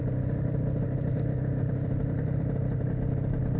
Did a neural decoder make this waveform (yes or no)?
no